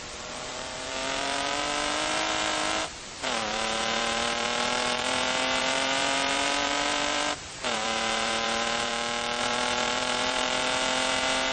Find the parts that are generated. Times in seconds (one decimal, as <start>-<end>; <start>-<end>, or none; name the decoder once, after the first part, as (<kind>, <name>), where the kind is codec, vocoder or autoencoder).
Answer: 0.0-8.9 (vocoder, BigVGAN v2); 9.4-11.5